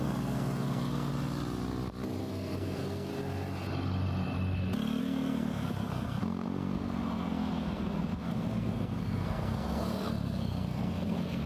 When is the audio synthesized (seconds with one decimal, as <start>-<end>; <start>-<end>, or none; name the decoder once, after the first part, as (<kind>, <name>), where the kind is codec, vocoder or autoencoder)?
0.0-1.1 (codec, SNAC); 2.2-3.1; 5.0-11.5